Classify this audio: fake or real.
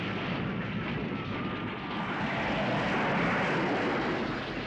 real